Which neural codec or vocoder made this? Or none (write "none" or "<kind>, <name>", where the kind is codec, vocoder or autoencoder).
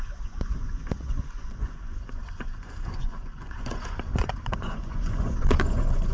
vocoder, Vocos